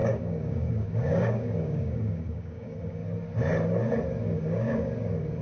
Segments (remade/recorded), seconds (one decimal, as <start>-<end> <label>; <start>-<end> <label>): 0.0-3.0 remade; 3.0-4.2 recorded; 4.2-5.4 remade